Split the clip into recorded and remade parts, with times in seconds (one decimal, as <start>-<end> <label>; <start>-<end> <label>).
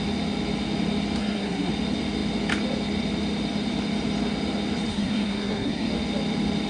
0.0-1.2 recorded; 1.2-1.7 remade; 1.7-4.9 recorded; 4.9-5.9 remade; 5.9-6.7 recorded